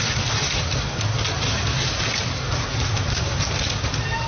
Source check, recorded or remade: recorded